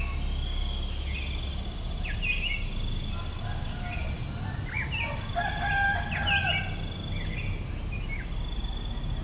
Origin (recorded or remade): recorded